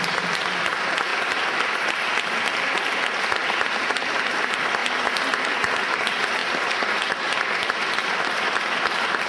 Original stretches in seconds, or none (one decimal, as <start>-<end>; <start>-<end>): 1.1-4.3; 4.8-5.3